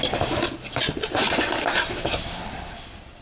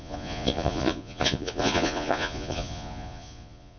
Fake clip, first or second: second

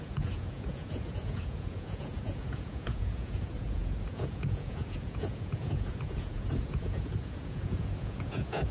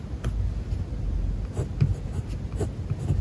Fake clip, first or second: first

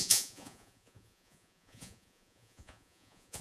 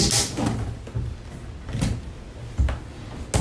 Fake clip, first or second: first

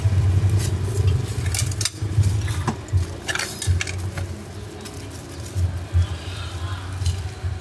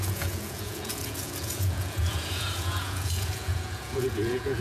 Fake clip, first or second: second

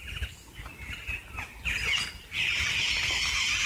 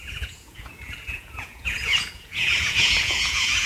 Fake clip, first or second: second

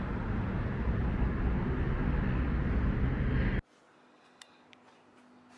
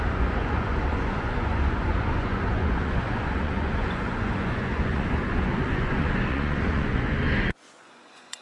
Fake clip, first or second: second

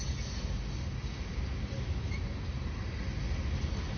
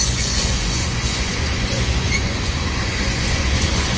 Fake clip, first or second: second